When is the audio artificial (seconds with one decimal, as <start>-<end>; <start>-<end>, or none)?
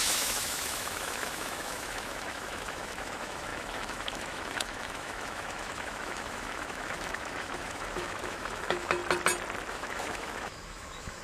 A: 0.0-9.0; 9.7-11.2